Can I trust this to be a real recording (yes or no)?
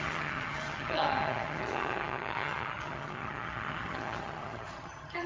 no